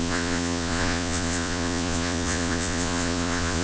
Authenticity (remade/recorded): remade